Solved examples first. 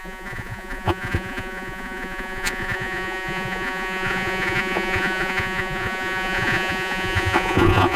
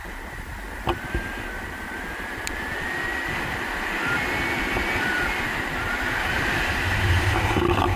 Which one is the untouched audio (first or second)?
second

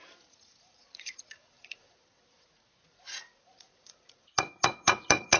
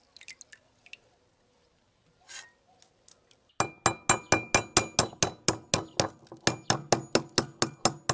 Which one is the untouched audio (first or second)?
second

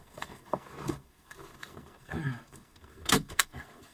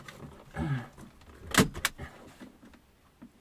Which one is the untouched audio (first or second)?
second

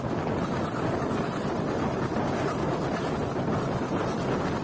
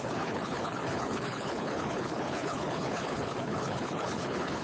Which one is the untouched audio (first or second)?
first